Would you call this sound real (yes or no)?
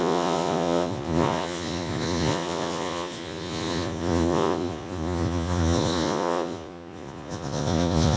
no